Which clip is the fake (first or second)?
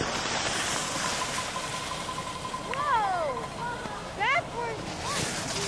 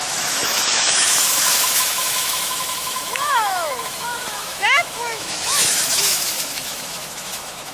second